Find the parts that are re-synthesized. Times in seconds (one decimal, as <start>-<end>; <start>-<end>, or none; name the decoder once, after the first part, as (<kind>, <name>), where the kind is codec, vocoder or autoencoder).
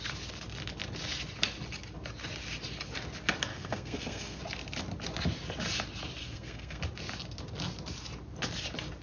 3.5-4.4 (codec, SNAC); 6.2-6.8